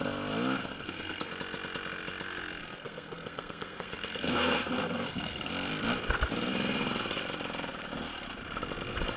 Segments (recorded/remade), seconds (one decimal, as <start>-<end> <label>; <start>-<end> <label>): 0.0-0.6 recorded; 0.6-1.3 remade; 1.3-2.6 recorded; 2.6-5.5 remade; 5.5-9.2 recorded